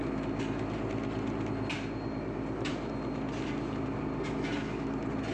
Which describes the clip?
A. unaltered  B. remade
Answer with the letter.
A